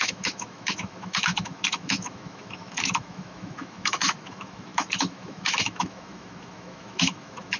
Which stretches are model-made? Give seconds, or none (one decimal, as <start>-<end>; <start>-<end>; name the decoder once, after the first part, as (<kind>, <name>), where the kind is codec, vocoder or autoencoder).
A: 0.0-7.6 (autoencoder, DAC-VAE)